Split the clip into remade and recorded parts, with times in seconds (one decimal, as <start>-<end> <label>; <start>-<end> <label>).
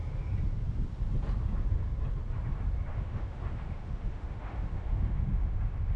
0.0-2.9 recorded; 2.9-6.0 remade